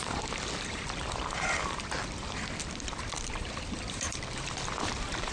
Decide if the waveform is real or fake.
fake